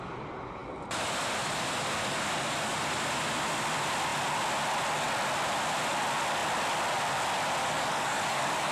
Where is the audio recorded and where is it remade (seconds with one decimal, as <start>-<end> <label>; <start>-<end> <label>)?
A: 0.0-7.6 recorded; 7.6-8.7 remade